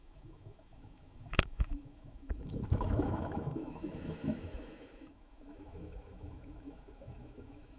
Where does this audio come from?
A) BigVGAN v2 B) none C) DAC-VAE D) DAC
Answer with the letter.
C